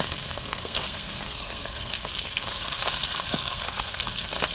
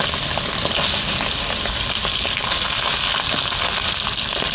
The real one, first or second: second